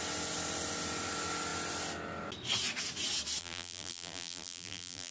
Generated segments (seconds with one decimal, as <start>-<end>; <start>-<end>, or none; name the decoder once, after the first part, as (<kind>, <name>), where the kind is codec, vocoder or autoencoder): 3.4-5.1 (vocoder, BigVGAN v2)